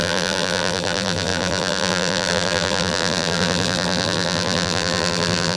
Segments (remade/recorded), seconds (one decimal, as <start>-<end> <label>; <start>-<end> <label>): 0.0-5.6 remade